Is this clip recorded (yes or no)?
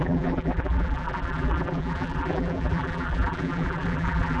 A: no